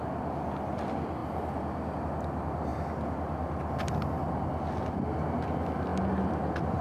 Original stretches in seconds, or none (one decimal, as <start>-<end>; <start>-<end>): 0.0-6.8